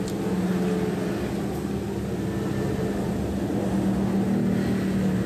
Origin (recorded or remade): recorded